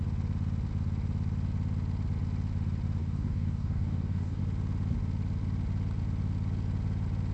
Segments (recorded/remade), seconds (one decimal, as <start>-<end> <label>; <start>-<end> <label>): 0.0-3.0 recorded; 3.0-4.4 remade; 4.4-7.3 recorded

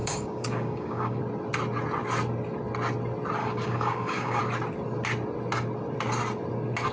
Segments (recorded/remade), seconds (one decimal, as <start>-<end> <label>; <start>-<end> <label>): 0.0-1.2 remade; 1.2-3.4 recorded; 3.4-4.4 remade; 4.4-6.9 recorded

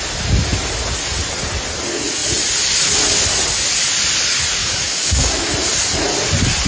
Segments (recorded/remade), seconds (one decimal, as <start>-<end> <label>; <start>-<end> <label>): 0.0-4.6 recorded; 4.6-5.5 remade; 5.5-6.7 recorded